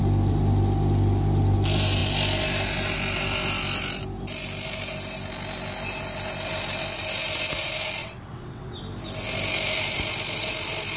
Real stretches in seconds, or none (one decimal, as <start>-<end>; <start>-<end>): 0.0-8.0; 8.8-11.0